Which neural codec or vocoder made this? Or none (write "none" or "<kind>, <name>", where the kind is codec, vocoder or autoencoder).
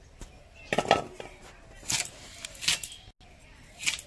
none